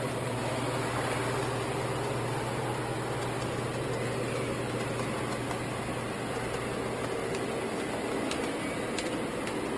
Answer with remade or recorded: recorded